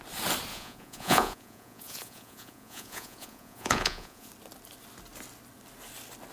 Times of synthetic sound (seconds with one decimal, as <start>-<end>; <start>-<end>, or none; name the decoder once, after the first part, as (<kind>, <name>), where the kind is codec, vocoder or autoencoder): 0.5-4.3 (vocoder, Vocos)